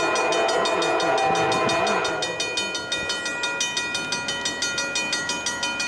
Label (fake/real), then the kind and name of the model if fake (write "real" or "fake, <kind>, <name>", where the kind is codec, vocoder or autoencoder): real